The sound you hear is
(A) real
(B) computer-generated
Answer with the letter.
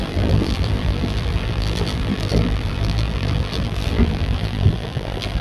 B